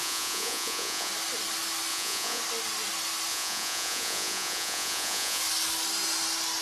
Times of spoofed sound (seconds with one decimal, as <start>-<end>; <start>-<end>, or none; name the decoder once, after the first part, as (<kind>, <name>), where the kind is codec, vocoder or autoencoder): 0.0-1.1 (vocoder, Vocos); 1.9-2.4; 3.3-5.4